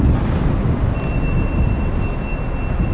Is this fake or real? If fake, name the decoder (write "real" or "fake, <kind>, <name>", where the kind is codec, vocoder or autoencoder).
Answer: real